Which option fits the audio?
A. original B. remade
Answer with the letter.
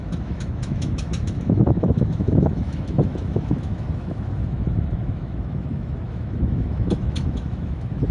B